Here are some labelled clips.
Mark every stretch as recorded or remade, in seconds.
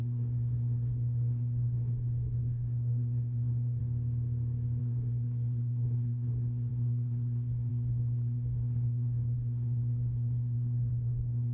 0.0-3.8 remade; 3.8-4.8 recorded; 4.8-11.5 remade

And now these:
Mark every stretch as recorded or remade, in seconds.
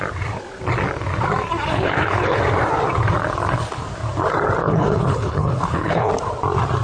0.0-1.7 recorded; 1.7-2.4 remade; 2.4-4.6 recorded; 4.6-6.1 remade; 6.1-6.8 recorded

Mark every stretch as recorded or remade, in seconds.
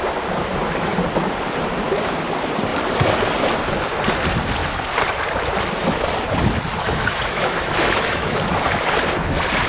0.0-6.8 recorded; 6.8-8.4 remade; 8.4-9.7 recorded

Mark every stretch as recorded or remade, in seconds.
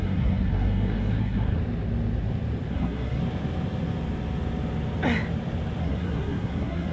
0.0-1.6 remade; 1.6-2.7 recorded; 2.7-3.2 remade; 3.2-5.8 recorded; 5.8-6.9 remade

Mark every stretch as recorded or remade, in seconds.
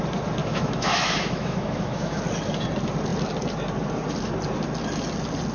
0.0-0.4 recorded; 0.4-2.2 remade; 2.2-5.5 recorded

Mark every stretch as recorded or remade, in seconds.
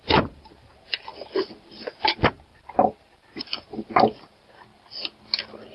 0.0-1.1 remade; 1.1-2.0 recorded; 2.0-4.7 remade; 4.7-5.7 recorded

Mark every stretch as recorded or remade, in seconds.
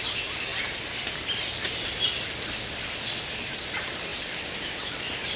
0.0-5.4 recorded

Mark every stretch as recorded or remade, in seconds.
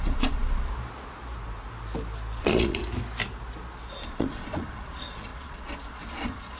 0.0-0.7 remade; 0.7-2.4 recorded; 2.4-2.8 remade; 2.8-3.9 recorded; 3.9-6.6 remade